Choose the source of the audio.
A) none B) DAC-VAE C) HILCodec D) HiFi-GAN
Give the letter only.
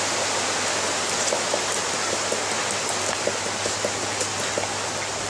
A